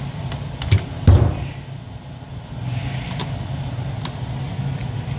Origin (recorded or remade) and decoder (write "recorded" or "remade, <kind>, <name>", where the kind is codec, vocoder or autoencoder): recorded